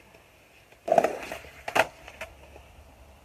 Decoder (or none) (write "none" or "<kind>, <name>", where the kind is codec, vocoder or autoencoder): none